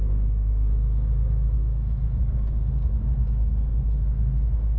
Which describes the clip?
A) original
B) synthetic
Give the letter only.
B